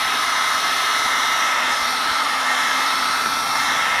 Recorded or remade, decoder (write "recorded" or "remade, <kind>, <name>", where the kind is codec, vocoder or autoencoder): remade, vocoder, BigVGAN v2